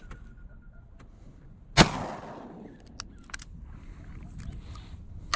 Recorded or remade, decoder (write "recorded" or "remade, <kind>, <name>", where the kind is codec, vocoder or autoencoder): recorded